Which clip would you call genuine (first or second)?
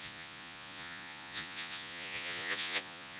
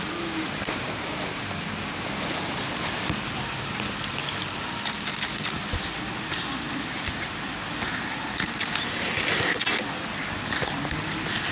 second